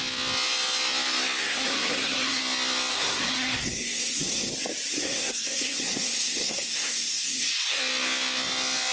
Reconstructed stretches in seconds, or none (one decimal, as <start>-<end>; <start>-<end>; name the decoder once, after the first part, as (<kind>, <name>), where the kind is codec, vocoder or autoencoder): 1.4-2.4 (codec, SNAC); 2.9-4.5; 4.9-7.8